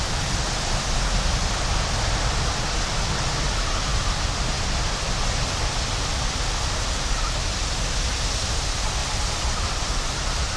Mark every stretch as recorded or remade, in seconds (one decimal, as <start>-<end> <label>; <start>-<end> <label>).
0.0-10.6 recorded